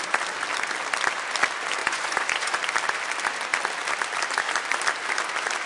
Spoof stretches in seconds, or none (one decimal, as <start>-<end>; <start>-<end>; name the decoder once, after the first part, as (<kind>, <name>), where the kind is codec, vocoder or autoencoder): 1.8-2.6 (vocoder, Vocos)